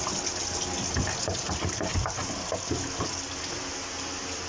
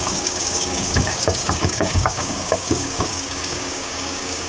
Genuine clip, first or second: first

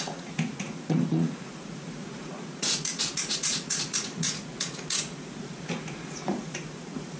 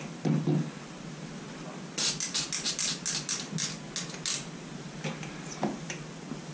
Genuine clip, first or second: second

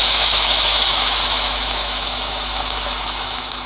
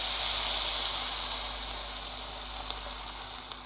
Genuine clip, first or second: second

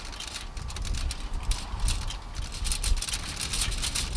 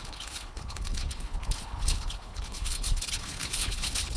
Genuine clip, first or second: first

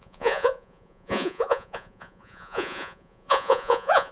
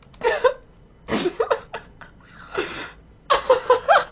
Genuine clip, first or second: second